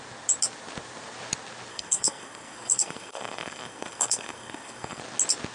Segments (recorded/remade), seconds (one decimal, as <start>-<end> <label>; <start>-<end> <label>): 0.0-1.7 recorded; 1.7-5.0 remade; 5.0-5.5 recorded